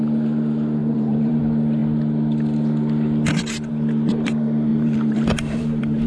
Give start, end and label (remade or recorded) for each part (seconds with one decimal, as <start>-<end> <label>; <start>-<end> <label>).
0.0-0.8 recorded; 0.8-1.4 remade; 1.4-4.7 recorded; 4.7-6.1 remade